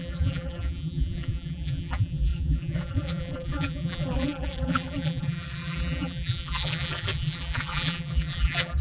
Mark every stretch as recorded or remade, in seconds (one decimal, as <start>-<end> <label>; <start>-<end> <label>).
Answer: 0.0-8.8 remade